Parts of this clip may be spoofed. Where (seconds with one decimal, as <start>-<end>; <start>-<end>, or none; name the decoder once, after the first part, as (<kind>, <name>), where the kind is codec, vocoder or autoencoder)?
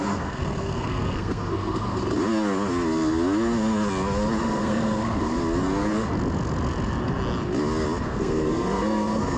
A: 0.0-2.0 (codec, SNAC); 4.4-5.4; 8.0-9.4